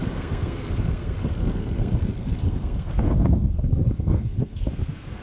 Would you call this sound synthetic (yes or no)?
yes